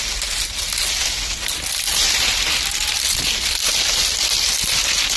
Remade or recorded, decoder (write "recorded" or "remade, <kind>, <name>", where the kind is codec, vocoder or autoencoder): recorded